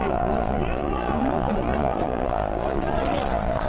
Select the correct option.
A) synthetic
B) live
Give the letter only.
A